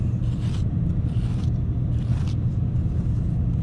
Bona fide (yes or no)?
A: yes